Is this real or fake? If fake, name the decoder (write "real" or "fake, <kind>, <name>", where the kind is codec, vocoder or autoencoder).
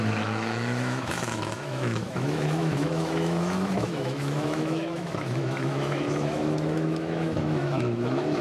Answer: fake, autoencoder, DAC-VAE